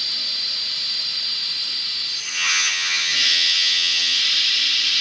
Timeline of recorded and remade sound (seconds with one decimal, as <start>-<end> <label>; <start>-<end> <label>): 0.0-2.3 recorded; 2.3-4.2 remade; 4.2-5.0 recorded